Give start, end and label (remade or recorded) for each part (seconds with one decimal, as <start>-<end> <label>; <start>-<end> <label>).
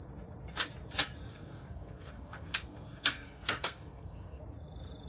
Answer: 0.0-1.3 recorded; 1.3-4.4 remade; 4.4-5.1 recorded